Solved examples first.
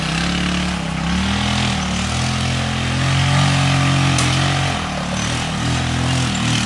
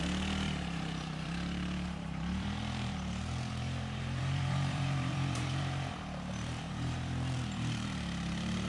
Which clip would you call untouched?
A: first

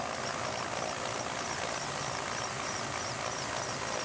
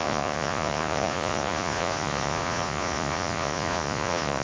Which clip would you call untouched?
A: first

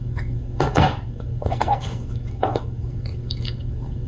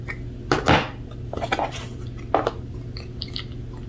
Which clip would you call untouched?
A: second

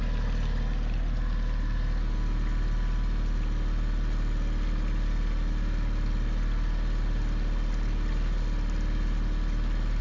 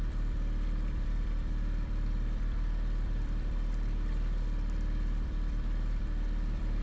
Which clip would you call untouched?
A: first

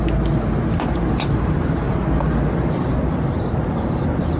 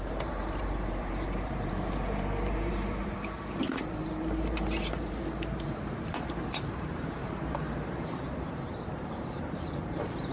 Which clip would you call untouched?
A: first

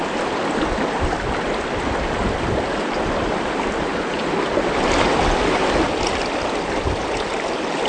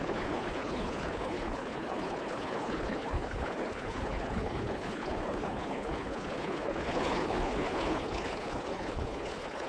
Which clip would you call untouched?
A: first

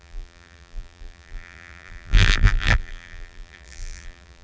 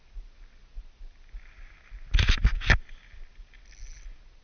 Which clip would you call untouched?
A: second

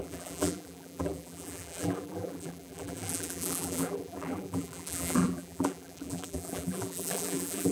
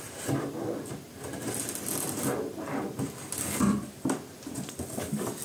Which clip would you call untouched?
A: second